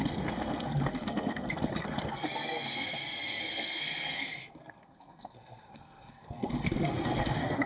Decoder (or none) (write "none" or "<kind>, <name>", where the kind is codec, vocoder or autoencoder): codec, SNAC